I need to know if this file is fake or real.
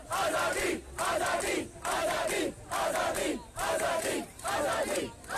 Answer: real